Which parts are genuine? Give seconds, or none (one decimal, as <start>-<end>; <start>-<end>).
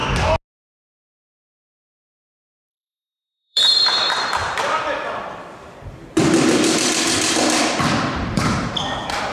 0.0-1.6